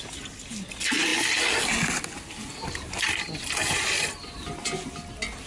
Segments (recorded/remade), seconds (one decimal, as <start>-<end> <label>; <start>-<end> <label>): 0.0-5.5 recorded